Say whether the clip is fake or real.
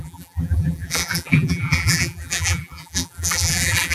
fake